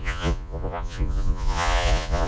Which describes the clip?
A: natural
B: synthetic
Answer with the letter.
B